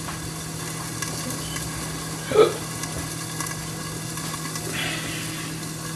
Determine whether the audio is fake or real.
real